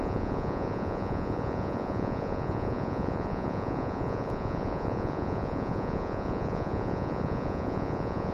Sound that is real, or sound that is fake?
fake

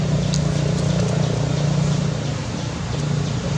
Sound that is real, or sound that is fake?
real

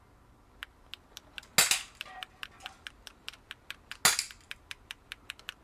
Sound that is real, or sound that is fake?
real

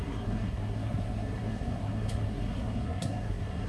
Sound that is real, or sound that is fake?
fake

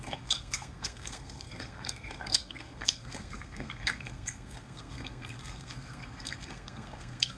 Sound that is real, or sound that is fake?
fake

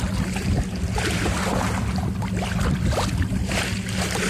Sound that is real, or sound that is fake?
real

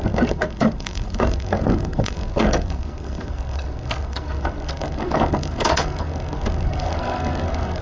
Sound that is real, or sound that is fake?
fake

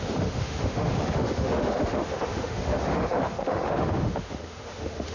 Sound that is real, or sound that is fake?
fake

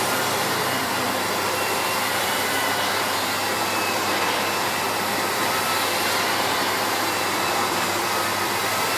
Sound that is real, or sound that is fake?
fake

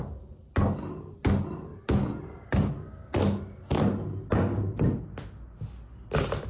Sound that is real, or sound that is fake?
real